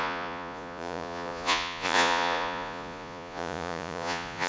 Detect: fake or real fake